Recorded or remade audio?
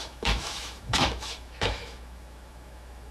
remade